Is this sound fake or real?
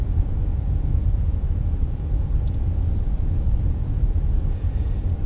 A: fake